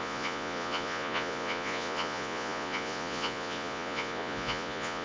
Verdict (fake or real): fake